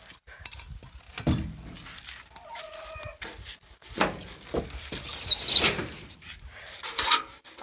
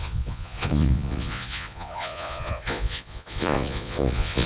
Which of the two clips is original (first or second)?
first